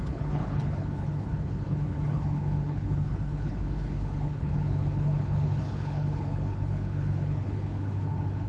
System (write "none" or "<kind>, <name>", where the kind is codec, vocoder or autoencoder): codec, HILCodec